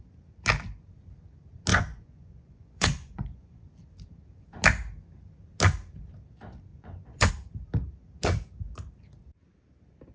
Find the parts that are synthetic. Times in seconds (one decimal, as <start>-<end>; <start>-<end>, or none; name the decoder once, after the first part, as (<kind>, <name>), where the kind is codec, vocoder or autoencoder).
1.7-3.6 (vocoder, Vocos); 6.7-7.3